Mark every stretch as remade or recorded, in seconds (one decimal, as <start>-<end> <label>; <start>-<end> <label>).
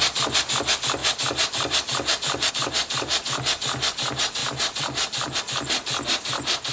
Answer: 0.0-1.0 recorded; 1.0-2.5 remade; 2.5-4.4 recorded; 4.4-5.4 remade; 5.4-6.7 recorded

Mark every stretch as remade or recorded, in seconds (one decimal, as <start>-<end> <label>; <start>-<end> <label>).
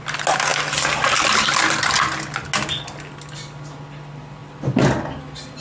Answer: 0.0-0.5 recorded; 0.5-1.4 remade; 1.4-5.6 recorded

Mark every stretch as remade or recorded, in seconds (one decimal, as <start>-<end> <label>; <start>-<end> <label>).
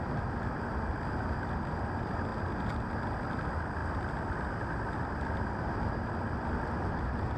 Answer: 0.0-7.4 recorded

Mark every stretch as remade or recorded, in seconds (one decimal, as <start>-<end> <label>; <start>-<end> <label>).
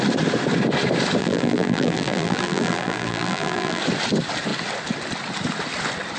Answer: 0.0-1.2 recorded; 1.2-3.8 remade; 3.8-6.2 recorded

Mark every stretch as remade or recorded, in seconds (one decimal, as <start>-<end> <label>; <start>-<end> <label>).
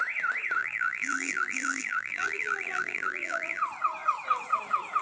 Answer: 0.0-0.6 recorded; 0.6-3.6 remade; 3.6-5.0 recorded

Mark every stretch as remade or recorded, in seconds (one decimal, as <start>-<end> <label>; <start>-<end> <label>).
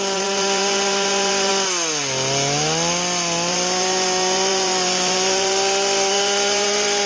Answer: 0.0-1.5 remade; 1.5-3.5 recorded; 3.5-7.1 remade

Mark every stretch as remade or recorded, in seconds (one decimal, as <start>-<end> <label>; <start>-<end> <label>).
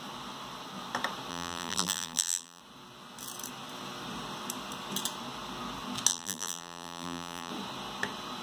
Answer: 0.0-1.3 recorded; 1.3-2.6 remade; 2.6-6.1 recorded; 6.1-7.5 remade; 7.5-8.4 recorded